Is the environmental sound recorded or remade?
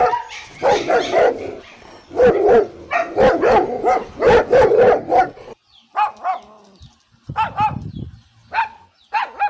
recorded